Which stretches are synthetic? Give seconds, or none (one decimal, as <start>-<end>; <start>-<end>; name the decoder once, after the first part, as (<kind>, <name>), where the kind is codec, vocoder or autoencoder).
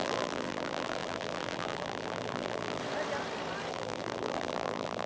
0.0-2.8 (vocoder, BigVGAN v2); 3.7-5.1